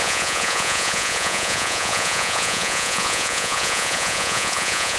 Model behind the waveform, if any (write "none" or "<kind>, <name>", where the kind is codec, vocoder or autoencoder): vocoder, Vocos